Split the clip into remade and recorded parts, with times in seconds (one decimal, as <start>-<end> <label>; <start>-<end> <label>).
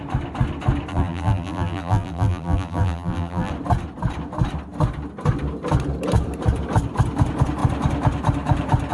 0.0-0.9 recorded; 0.9-3.5 remade; 3.5-8.9 recorded